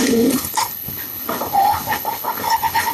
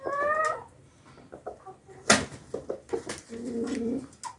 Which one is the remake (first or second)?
first